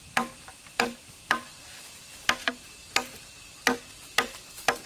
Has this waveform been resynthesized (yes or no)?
no